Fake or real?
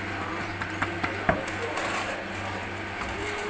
real